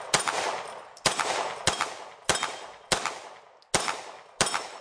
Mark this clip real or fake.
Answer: real